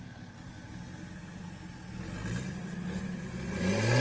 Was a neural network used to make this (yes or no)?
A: no